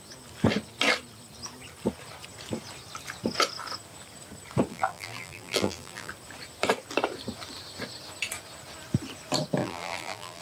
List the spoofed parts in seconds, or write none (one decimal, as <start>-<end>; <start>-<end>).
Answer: 4.7-6.1; 9.6-10.4